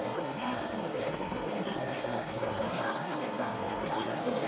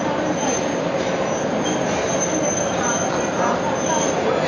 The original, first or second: second